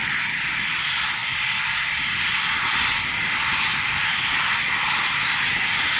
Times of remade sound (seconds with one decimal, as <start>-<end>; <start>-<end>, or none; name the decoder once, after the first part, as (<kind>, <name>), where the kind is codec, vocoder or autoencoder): 0.0-0.5 (vocoder, BigVGAN v2); 1.2-4.6